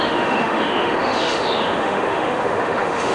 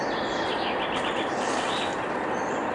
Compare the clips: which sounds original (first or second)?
second